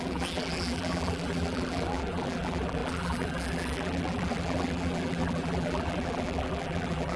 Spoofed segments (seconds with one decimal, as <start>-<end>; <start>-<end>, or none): 0.0-7.2